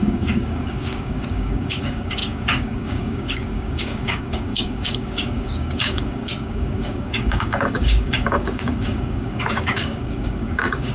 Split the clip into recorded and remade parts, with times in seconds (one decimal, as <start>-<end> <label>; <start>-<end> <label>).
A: 0.0-10.9 remade